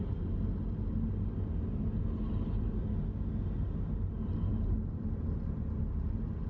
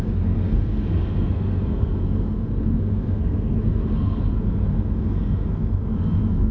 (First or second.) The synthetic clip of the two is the second